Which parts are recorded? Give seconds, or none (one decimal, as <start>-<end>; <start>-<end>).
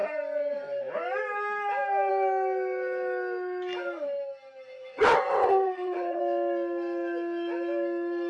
0.0-4.9; 6.2-8.3